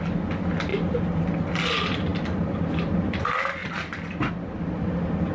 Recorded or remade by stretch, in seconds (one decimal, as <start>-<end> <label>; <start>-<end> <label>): 0.0-5.3 recorded

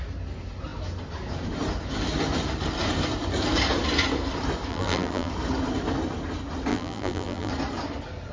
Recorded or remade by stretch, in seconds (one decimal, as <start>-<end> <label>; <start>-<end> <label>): 0.0-4.7 recorded; 4.7-5.3 remade; 5.3-6.7 recorded; 6.7-7.5 remade; 7.5-8.3 recorded

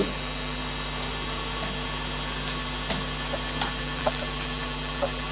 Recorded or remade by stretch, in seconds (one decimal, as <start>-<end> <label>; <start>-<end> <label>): 0.0-0.6 remade; 0.6-3.8 recorded; 3.8-5.3 remade